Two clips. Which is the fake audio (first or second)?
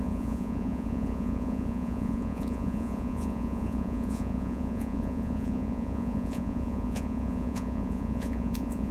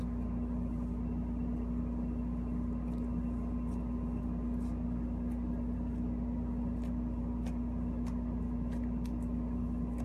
first